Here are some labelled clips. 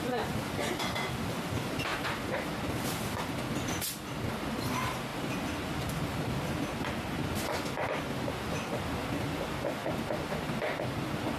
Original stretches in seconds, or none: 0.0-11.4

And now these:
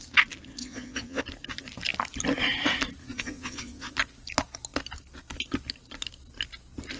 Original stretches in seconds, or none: 0.0-0.6; 1.2-3.0; 3.9-7.0

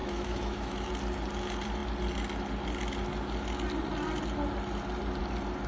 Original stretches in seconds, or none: 0.9-5.7

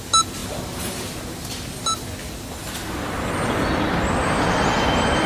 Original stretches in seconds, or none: 0.0-5.3